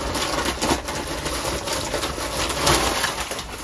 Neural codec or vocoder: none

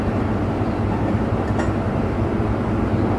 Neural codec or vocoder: none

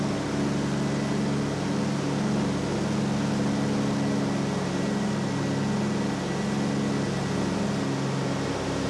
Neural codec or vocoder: none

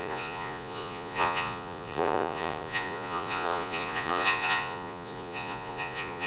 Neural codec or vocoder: vocoder, Vocos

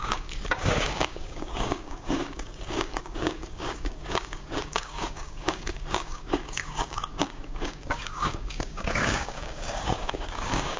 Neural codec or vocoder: codec, DAC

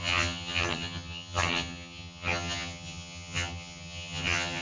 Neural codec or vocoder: vocoder, HiFi-GAN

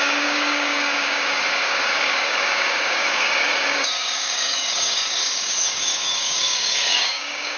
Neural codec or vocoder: codec, DAC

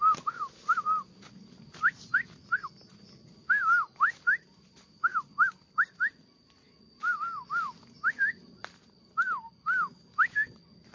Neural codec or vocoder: none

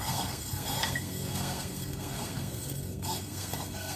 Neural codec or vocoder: codec, SNAC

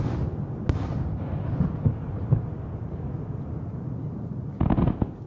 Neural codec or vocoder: none